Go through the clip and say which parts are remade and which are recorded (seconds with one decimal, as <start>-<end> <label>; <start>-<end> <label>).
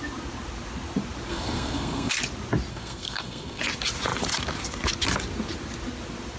0.0-1.3 recorded; 1.3-2.1 remade; 2.1-2.7 recorded; 2.7-3.6 remade; 3.6-6.4 recorded